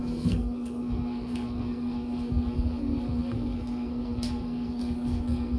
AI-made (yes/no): yes